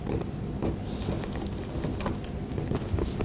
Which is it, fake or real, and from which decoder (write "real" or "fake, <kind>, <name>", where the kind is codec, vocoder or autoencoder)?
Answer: real